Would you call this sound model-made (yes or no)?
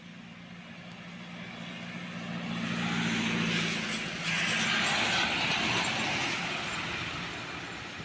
no